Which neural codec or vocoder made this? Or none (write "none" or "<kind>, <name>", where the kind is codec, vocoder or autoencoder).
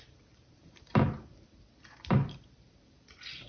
vocoder, BigVGAN v2